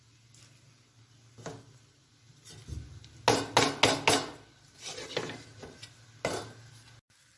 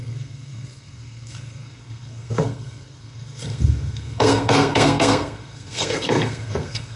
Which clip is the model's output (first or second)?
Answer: second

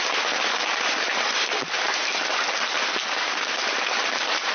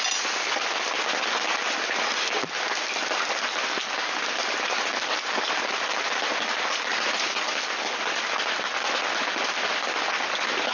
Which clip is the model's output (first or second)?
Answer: first